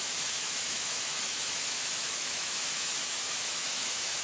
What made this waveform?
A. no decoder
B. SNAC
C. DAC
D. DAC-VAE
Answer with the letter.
D